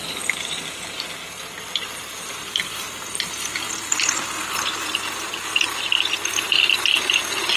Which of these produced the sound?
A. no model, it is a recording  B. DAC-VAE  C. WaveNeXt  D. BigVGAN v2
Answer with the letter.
A